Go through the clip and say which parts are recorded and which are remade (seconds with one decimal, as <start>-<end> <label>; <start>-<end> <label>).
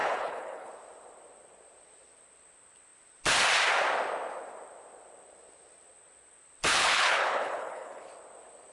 0.0-0.7 remade; 0.7-6.7 recorded; 6.7-8.1 remade; 8.1-8.7 recorded